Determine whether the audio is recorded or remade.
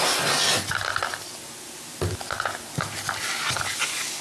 recorded